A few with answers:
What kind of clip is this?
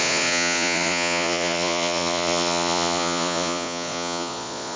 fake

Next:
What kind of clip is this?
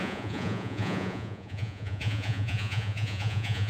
fake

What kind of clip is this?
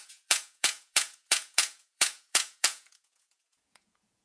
fake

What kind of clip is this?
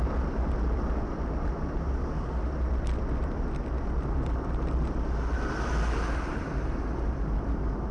real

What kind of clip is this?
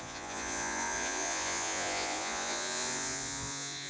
fake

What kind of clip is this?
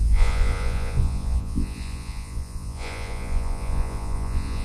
fake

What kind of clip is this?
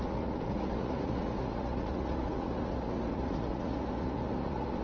fake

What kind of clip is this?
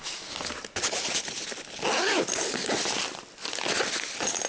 real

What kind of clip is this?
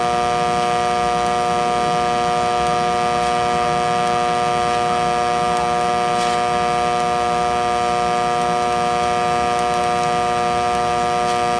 real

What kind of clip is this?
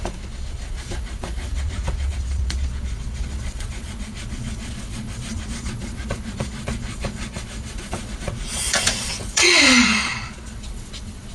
fake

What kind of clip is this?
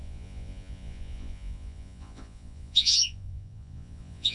fake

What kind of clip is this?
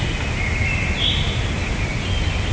real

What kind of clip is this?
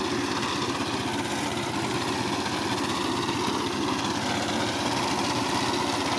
real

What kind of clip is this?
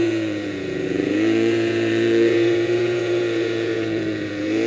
fake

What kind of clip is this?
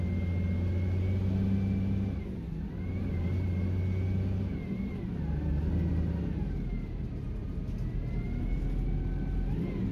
real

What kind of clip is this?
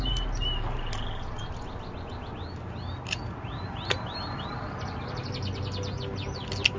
real